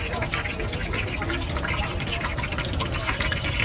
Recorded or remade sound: recorded